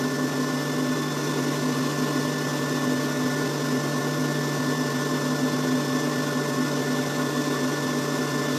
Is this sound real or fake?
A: real